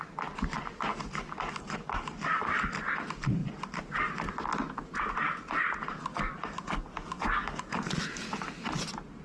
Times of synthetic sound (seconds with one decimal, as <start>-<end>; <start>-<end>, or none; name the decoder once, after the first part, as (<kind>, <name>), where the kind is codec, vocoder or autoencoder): 0.9-2.8 (codec, DAC); 6.1-7.9

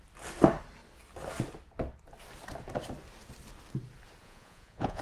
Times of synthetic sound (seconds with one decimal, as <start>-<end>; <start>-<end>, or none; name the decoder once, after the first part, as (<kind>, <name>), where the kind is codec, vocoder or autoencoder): 4.2-5.0 (vocoder, Vocos)